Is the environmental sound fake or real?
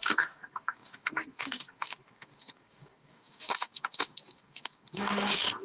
fake